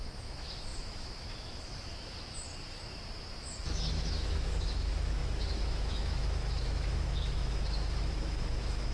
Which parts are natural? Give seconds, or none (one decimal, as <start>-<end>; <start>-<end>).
2.5-3.4